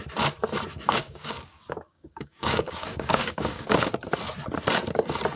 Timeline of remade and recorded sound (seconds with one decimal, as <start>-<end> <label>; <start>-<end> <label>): 0.0-0.7 recorded; 0.7-3.9 remade; 3.9-5.4 recorded